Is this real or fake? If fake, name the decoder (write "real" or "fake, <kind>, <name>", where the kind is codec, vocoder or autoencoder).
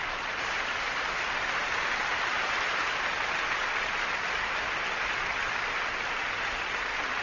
real